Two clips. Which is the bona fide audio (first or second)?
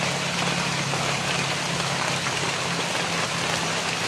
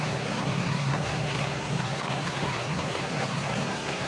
first